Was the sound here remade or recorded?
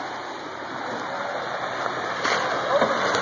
recorded